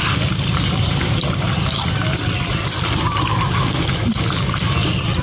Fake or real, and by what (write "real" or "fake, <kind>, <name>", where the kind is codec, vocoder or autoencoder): real